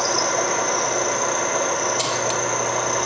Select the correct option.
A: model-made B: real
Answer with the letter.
B